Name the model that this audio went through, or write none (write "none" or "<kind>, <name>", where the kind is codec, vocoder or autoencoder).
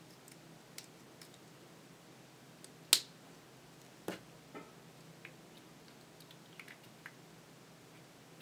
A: none